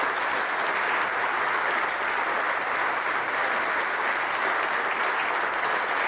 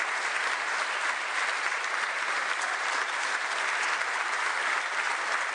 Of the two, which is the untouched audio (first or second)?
first